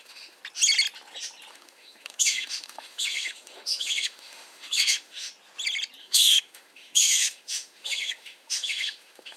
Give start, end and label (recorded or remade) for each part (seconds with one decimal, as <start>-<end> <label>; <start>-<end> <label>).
0.0-0.4 remade; 0.4-1.5 recorded; 1.5-5.3 remade; 5.3-6.0 recorded; 6.0-9.4 remade